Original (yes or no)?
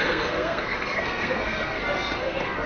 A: no